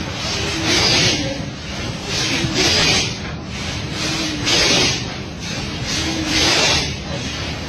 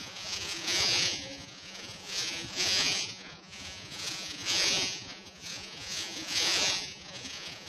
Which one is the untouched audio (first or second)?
first